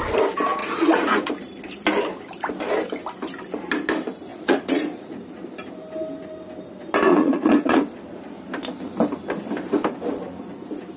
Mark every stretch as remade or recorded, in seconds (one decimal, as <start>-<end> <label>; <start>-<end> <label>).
0.0-0.6 recorded; 0.6-1.3 remade; 1.3-4.3 recorded; 4.3-5.2 remade; 5.2-7.1 recorded; 7.1-7.8 remade; 7.8-11.0 recorded